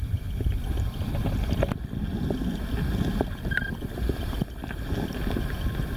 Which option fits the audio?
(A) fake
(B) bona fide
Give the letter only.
B